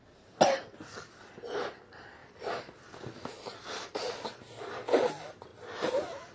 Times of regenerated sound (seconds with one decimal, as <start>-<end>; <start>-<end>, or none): none